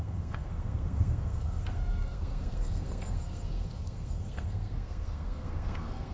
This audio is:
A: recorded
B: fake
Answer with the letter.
B